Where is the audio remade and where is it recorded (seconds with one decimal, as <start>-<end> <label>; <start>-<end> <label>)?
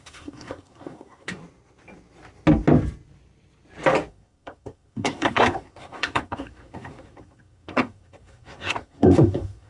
0.0-1.4 remade; 1.4-4.1 recorded; 4.1-9.7 remade